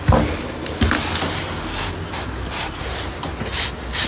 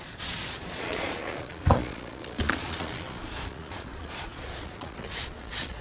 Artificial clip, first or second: second